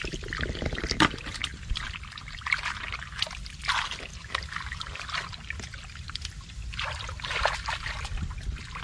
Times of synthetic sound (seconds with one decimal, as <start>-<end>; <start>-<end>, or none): none